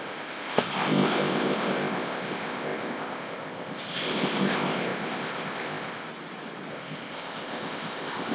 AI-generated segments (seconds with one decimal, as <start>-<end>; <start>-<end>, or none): 0.0-6.1; 6.7-8.3